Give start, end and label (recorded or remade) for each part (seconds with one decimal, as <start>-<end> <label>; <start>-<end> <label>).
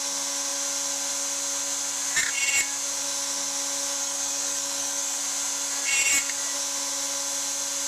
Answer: 0.0-4.0 recorded; 4.0-5.2 remade; 5.2-7.9 recorded